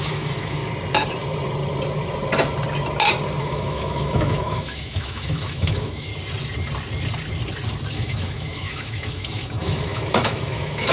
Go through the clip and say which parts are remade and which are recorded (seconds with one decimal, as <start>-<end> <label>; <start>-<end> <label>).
0.0-0.6 remade; 0.6-3.4 recorded; 3.4-6.1 remade; 6.1-7.9 recorded; 7.9-10.9 remade